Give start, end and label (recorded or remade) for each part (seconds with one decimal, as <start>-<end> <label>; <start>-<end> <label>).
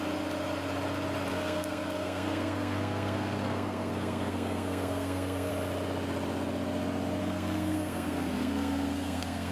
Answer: 0.0-1.3 recorded; 1.3-5.5 remade; 5.5-7.2 recorded; 7.2-9.5 remade